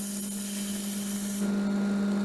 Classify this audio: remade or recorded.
recorded